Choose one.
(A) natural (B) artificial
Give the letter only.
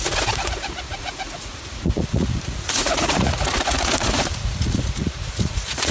B